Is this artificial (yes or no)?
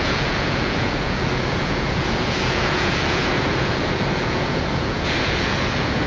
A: yes